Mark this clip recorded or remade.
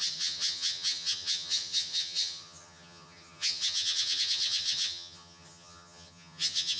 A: remade